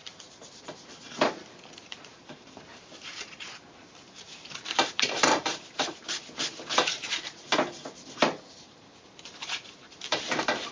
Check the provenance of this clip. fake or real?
fake